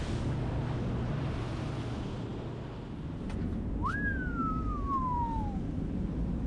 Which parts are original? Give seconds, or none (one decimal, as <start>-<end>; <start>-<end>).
0.0-6.5